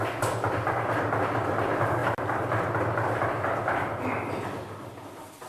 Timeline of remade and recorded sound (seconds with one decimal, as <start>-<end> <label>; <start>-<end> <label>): 0.0-5.5 recorded